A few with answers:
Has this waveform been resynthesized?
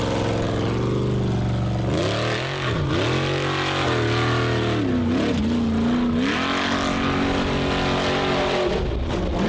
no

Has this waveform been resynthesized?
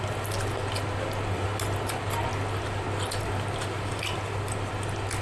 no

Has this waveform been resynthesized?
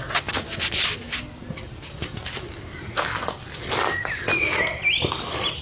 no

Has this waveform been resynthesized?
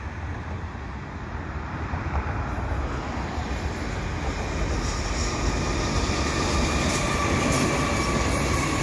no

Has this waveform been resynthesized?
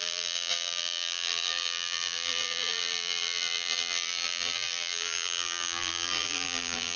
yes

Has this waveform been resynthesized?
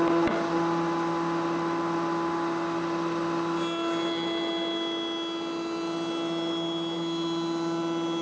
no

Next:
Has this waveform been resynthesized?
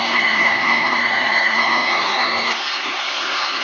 yes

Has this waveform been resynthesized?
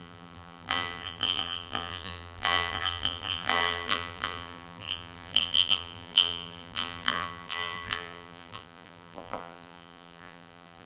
yes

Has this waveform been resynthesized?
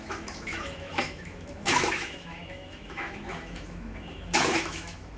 yes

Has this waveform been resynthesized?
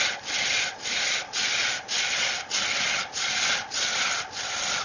no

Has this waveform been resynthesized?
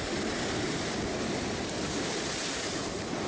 no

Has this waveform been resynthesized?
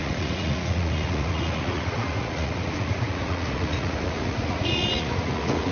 yes